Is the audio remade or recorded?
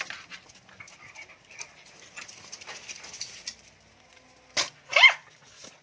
recorded